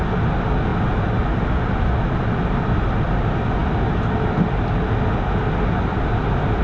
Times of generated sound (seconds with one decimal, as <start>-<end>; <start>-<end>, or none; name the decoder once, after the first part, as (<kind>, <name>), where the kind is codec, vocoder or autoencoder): none